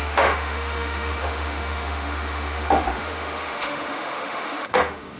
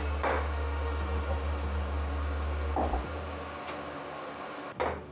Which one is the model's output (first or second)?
first